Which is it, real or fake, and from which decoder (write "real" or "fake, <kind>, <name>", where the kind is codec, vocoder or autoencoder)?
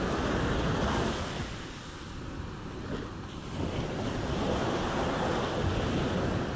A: real